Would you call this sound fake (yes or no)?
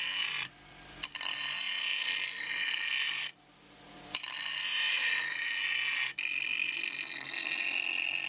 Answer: no